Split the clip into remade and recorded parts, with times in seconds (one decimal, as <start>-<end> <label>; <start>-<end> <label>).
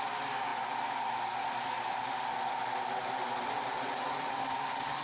0.0-5.0 recorded